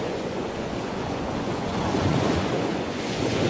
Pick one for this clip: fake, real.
fake